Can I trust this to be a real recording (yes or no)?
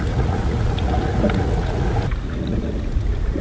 no